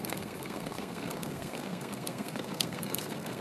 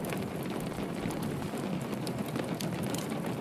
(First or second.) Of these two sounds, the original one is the second